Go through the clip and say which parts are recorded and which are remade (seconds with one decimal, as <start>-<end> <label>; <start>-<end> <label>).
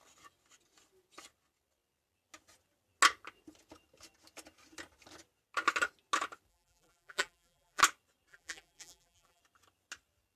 0.0-6.5 recorded; 6.5-7.8 remade; 7.8-8.3 recorded; 8.3-9.4 remade; 9.4-10.4 recorded